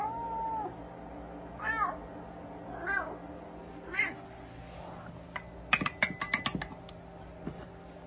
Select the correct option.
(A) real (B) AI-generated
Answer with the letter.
A